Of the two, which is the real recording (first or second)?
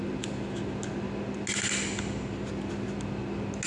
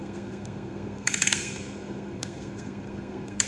first